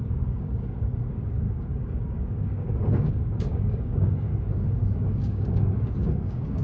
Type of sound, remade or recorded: remade